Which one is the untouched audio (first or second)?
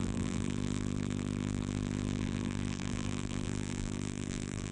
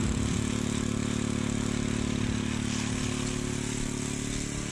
second